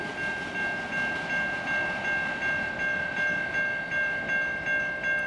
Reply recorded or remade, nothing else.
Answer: recorded